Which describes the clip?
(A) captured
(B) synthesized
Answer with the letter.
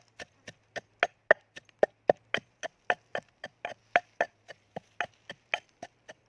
A